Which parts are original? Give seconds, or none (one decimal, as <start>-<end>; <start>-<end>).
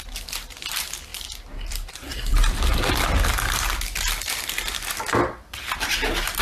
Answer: 0.0-1.1; 2.9-6.4